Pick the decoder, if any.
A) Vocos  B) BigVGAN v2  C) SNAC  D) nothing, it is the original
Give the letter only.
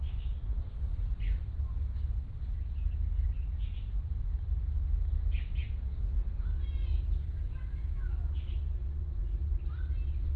D